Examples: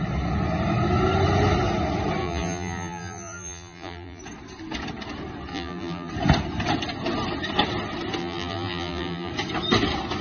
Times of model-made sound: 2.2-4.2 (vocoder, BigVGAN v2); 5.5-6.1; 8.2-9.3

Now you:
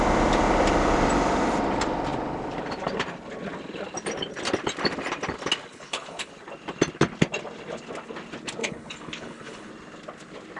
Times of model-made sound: 5.7-6.3 (codec, HILCodec); 8.6-9.7

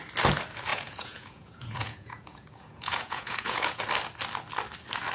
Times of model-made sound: 0.7-3.8 (vocoder, Vocos)

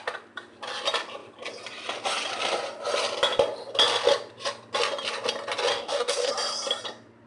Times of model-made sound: 5.7-6.3 (codec, DAC)

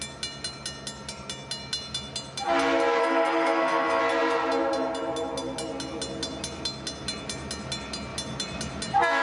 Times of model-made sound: 3.0-4.0 (codec, SNAC)

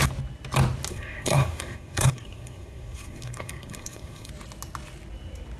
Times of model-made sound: 0.9-4.3 (codec, SNAC)

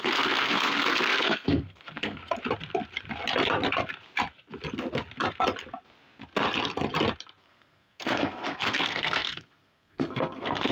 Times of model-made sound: 0.0-2.2 (codec, SNAC); 7.4-10.7

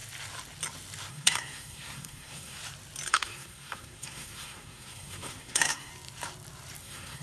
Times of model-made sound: 1.1-2.6 (codec, SNAC); 3.1-5.9; 6.8-7.2